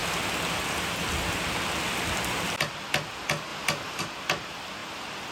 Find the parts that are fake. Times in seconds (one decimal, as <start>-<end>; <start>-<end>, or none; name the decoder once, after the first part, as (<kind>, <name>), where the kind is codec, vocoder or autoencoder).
none